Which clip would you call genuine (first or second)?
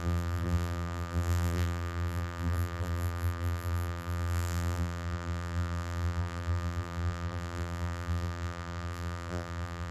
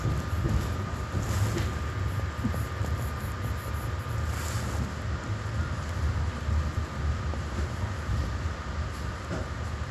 second